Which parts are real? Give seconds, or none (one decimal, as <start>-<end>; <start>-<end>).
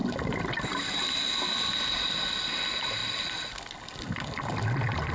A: 0.0-5.1